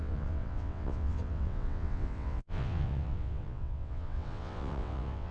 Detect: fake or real fake